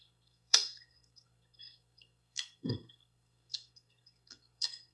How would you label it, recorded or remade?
remade